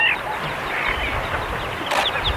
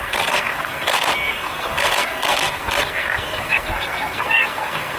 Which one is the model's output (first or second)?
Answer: second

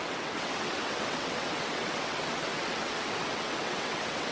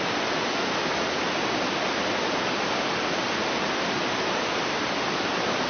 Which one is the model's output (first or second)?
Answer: first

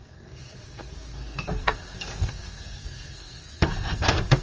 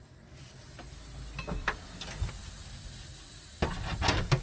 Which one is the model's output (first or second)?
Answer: first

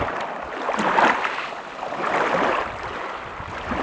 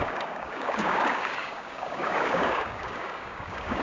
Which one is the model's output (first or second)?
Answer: second